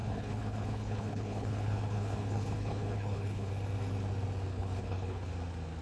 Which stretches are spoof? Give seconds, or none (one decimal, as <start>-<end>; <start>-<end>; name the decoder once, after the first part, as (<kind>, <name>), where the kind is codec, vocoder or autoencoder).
0.0-3.5 (codec, HILCodec); 4.5-5.3